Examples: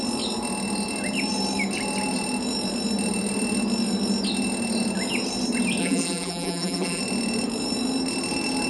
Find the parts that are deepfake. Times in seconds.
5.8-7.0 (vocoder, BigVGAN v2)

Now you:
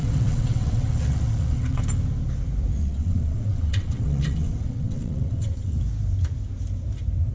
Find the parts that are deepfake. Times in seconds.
0.0-1.8 (vocoder, WaveNeXt); 2.8-5.8

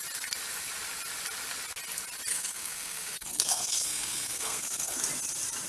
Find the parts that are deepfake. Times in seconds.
2.3-5.0 (codec, SNAC)

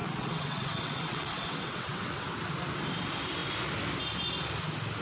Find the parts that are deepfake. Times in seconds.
0.0-2.3 (vocoder, WaveNeXt)

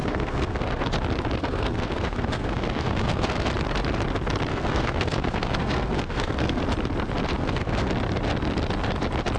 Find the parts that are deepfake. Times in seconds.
0.0-0.9 (codec, SNAC); 1.4-3.5; 4.5-6.6; 7.4-7.9

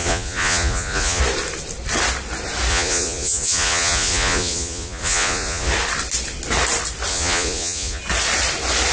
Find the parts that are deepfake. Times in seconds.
0.0-1.2 (vocoder, Vocos); 2.7-5.7; 7.1-8.0

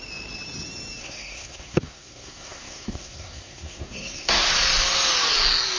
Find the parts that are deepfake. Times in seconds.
1.0-4.5 (codec, SNAC)

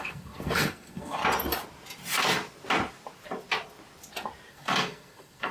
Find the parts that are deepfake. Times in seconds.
0.0-1.2 (codec, SNAC); 4.5-5.5